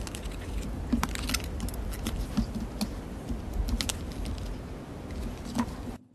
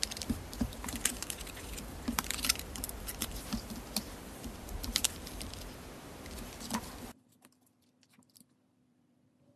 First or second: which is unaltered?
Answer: first